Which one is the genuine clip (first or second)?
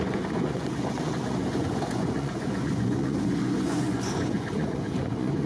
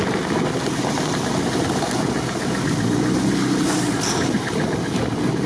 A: second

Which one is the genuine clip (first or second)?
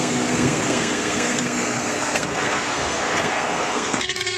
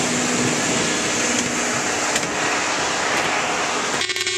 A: second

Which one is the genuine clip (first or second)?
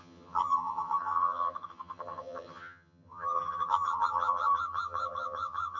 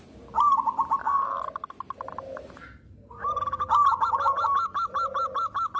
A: second